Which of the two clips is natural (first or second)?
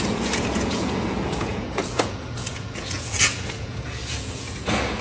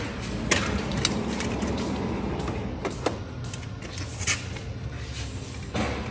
second